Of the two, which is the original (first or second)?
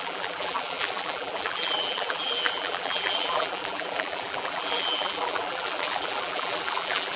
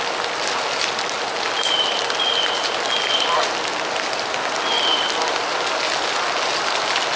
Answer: second